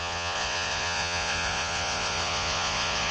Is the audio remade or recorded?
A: remade